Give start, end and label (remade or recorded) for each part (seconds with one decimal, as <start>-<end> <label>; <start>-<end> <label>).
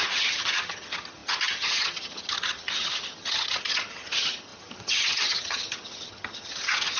0.0-7.0 remade